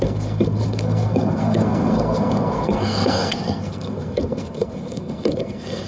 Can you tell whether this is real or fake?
fake